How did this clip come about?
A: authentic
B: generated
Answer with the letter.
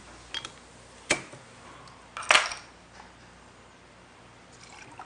A